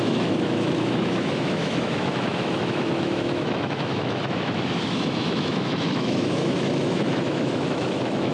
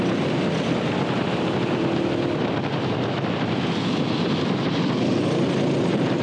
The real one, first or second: second